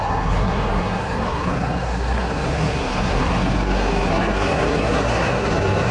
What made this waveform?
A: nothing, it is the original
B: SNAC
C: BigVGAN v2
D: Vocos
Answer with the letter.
B